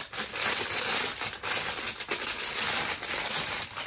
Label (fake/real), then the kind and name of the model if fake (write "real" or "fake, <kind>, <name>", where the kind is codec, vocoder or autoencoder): real